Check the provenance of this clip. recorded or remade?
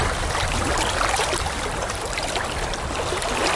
recorded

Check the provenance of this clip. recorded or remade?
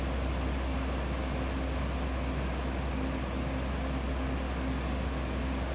recorded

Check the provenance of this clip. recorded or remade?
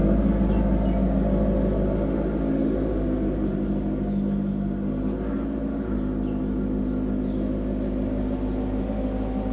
recorded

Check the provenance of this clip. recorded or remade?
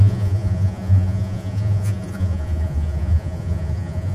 remade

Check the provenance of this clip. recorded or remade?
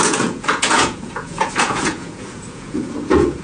remade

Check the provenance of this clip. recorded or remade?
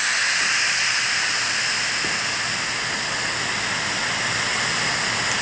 recorded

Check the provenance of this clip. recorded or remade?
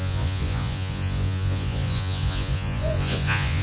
remade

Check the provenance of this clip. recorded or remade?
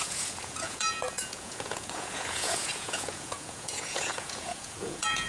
remade